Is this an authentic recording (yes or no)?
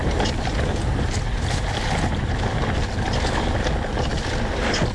yes